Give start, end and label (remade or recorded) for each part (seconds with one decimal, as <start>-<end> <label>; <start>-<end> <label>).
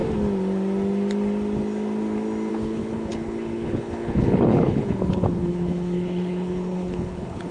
0.0-2.5 recorded; 2.5-7.5 remade